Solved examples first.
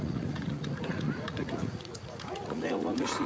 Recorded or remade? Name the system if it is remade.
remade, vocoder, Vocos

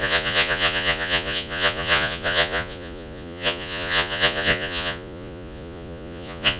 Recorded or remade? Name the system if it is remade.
remade, vocoder, Vocos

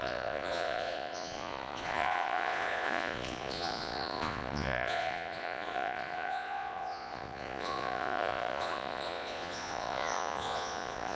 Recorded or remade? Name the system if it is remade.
remade, vocoder, Vocos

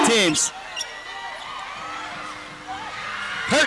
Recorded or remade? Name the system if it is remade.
recorded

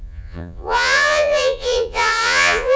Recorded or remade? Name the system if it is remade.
remade, vocoder, Vocos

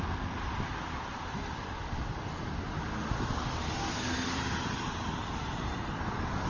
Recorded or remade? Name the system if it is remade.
recorded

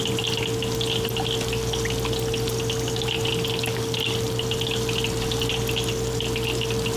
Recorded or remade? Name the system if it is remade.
recorded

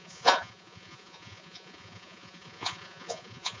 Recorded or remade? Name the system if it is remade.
remade, vocoder, Vocos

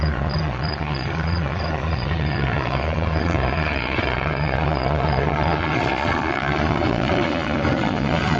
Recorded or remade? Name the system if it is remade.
remade, vocoder, Vocos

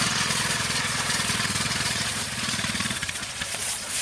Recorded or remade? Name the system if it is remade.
remade, vocoder, Vocos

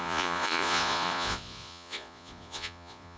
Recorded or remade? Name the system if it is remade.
remade, vocoder, Vocos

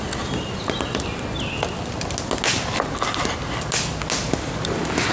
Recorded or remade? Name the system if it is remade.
recorded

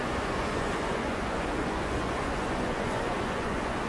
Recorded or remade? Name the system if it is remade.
remade, vocoder, Vocos